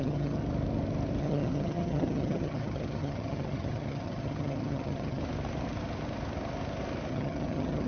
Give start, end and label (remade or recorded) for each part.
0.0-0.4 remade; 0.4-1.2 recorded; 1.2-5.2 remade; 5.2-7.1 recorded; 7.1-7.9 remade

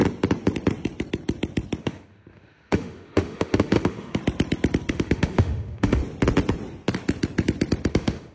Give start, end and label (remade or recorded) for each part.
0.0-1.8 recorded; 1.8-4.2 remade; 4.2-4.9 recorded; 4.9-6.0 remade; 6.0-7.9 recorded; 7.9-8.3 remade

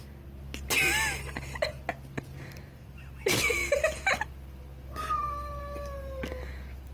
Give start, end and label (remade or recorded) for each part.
0.0-5.2 recorded; 5.2-6.3 remade; 6.3-6.9 recorded

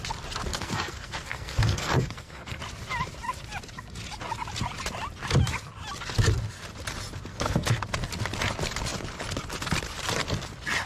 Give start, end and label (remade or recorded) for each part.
0.0-0.5 recorded; 0.5-2.6 remade; 2.6-7.3 recorded; 7.3-7.8 remade; 7.8-10.9 recorded